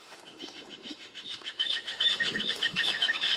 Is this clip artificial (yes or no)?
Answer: yes